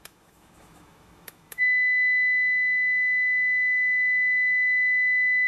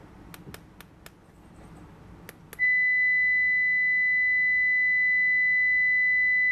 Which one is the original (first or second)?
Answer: second